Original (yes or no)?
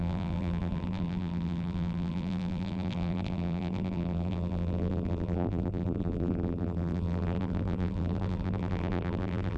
no